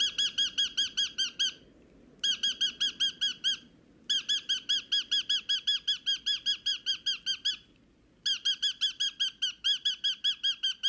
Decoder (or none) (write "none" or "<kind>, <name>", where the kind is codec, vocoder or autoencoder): none